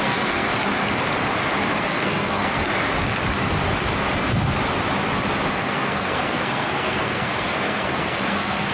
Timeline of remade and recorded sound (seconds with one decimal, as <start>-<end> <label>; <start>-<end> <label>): 0.0-0.5 remade; 0.5-1.7 recorded; 1.7-2.7 remade; 2.7-5.5 recorded; 5.5-8.7 remade